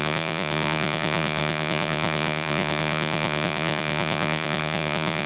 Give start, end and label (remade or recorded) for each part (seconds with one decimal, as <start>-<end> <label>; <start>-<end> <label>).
0.0-5.3 remade